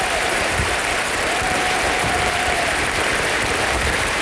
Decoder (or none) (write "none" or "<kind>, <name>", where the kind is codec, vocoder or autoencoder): vocoder, BigVGAN v2